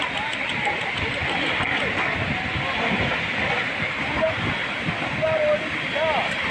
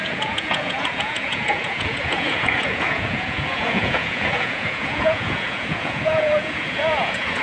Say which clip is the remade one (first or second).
second